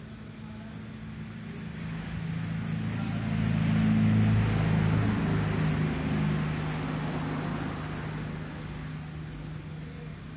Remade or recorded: recorded